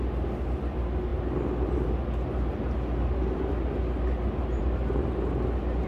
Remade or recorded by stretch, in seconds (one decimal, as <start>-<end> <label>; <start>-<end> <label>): 0.0-5.9 recorded